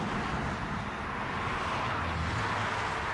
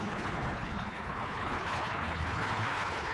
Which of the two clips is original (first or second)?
first